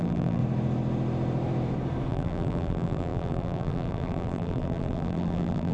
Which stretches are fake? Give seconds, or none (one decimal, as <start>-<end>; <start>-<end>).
0.0-0.4; 2.1-5.7